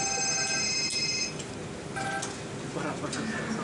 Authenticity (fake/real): real